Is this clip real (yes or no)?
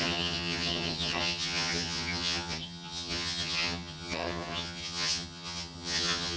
no